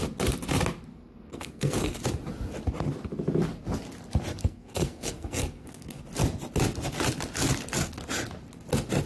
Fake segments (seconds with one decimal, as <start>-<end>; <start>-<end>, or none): 0.9-2.0; 4.4-6.0